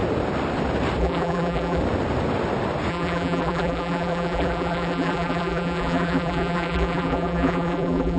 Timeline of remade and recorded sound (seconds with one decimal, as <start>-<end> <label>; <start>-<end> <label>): 0.0-1.0 recorded; 1.0-1.8 remade; 1.8-2.9 recorded; 2.9-8.2 remade